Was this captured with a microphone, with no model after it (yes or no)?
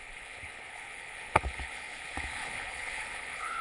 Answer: no